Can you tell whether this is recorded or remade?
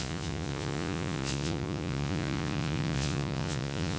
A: remade